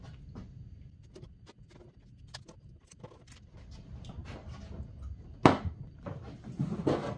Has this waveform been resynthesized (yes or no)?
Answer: no